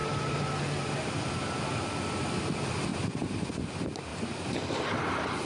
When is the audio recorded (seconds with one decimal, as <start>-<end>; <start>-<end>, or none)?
0.6-2.9; 3.5-4.1; 4.7-5.5